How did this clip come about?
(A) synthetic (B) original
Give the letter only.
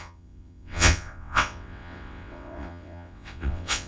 A